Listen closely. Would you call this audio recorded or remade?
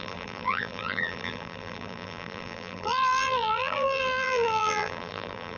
remade